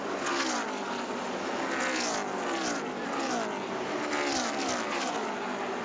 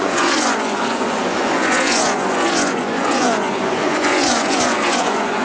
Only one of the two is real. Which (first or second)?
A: first